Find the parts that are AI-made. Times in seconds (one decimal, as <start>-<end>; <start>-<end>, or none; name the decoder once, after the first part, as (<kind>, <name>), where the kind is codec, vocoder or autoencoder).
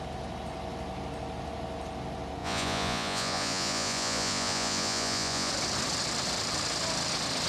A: 2.4-5.5 (vocoder, Vocos)